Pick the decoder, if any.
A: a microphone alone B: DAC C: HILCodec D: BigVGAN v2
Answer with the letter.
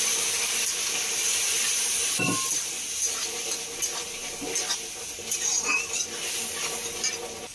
A